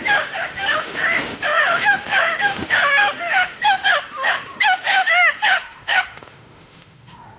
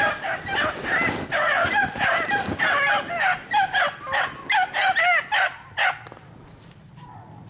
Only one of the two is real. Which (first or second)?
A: second